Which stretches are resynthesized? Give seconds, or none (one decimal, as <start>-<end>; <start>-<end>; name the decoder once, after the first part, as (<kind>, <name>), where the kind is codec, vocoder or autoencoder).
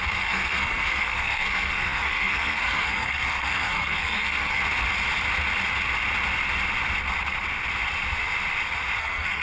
0.0-4.6 (codec, SNAC); 9.0-9.4